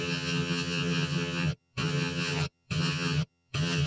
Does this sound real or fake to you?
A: fake